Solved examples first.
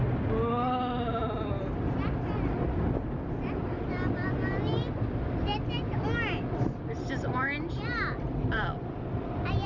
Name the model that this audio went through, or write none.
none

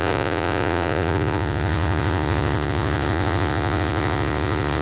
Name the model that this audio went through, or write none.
vocoder, Vocos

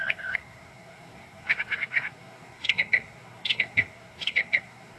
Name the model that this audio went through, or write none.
codec, SNAC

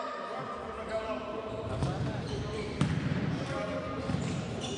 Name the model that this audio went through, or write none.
vocoder, BigVGAN v2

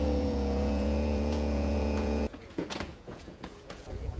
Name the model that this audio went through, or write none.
vocoder, Vocos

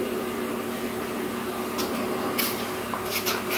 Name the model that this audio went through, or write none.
none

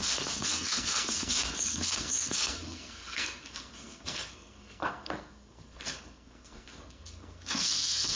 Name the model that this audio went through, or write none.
codec, SNAC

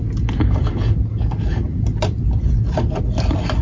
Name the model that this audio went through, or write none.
none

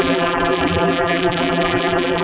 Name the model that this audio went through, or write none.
vocoder, BigVGAN v2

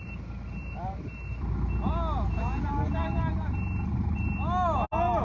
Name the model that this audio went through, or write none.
none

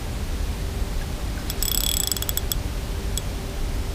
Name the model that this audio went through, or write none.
none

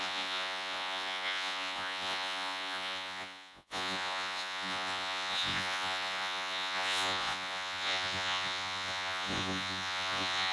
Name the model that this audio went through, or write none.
vocoder, Vocos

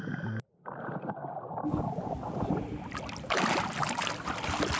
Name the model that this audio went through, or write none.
none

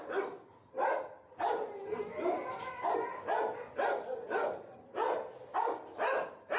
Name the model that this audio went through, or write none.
none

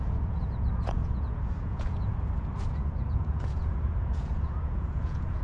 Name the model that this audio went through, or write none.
vocoder, Vocos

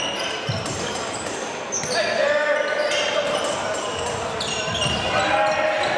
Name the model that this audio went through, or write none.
none